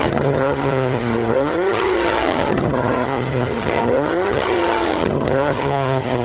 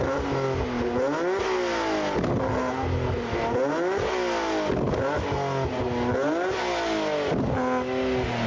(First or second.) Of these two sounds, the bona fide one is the second